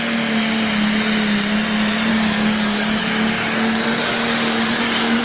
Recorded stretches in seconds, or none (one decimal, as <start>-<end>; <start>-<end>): 0.0-2.1